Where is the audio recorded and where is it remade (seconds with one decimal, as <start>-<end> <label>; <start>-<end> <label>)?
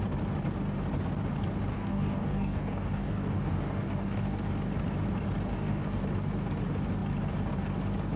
0.0-1.7 recorded; 1.7-4.4 remade; 4.4-5.5 recorded; 5.5-6.0 remade; 6.0-8.2 recorded